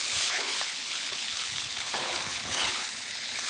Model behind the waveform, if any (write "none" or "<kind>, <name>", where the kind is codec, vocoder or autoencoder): codec, HILCodec